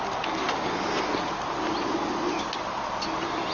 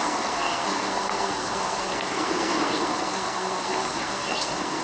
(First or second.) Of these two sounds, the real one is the first